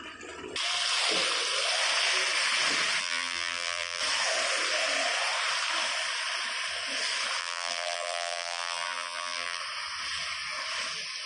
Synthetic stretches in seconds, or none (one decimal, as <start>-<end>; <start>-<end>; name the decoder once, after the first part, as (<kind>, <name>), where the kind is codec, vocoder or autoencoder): 3.0-4.0 (vocoder, BigVGAN v2); 7.4-9.6